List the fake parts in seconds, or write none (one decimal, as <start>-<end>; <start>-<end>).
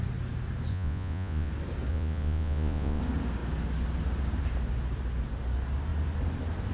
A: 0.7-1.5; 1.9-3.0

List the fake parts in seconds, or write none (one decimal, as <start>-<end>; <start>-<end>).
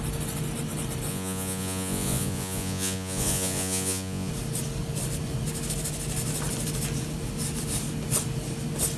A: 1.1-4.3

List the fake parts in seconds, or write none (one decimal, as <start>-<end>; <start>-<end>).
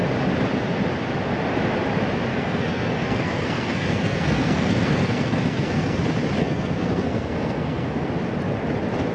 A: 2.3-6.0; 6.4-8.1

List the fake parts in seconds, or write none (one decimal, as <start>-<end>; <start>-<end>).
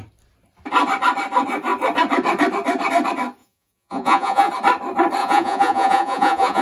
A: 3.4-4.5; 5.2-6.6